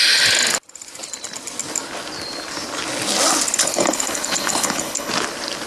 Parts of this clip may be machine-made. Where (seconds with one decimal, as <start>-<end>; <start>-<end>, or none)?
3.6-5.1